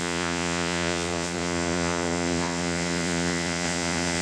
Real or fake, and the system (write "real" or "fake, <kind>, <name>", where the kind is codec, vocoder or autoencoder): fake, vocoder, Vocos